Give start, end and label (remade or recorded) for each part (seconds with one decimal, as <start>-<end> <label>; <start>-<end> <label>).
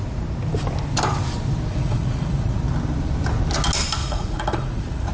0.0-1.7 recorded; 1.7-2.6 remade; 2.6-4.0 recorded; 4.0-5.1 remade